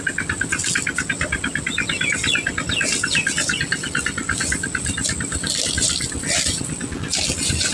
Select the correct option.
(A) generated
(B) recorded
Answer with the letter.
B